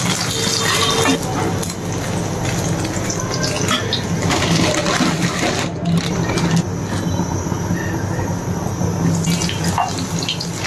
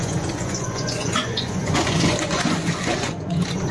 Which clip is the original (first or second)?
first